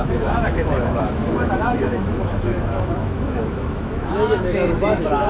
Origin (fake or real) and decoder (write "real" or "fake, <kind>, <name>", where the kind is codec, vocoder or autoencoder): fake, autoencoder, DAC-VAE